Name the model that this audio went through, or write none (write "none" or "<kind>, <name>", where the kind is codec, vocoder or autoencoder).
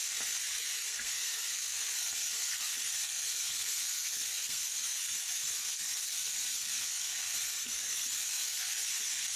codec, SNAC